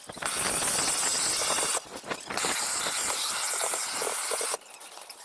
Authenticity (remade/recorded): recorded